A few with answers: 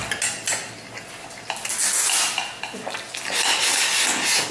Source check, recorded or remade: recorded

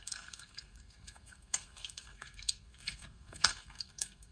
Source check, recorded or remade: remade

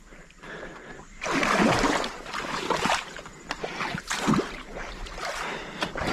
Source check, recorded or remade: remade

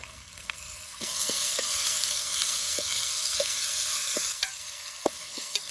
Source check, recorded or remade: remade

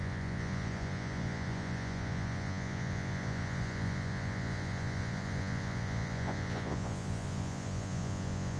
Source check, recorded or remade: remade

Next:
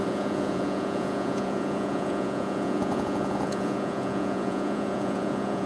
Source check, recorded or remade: remade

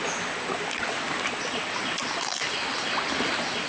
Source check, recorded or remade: recorded